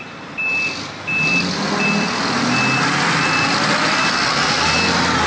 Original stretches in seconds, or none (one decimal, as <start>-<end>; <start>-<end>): 0.0-5.3